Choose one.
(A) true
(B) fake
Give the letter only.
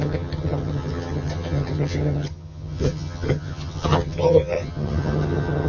B